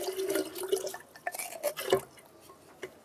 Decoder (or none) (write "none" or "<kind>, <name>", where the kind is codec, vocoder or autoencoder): none